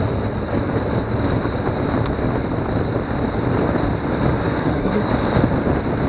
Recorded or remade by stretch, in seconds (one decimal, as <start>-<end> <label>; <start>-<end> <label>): 0.0-4.6 recorded; 4.6-5.1 remade; 5.1-6.1 recorded